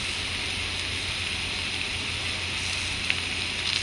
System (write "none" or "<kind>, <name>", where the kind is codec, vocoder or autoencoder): none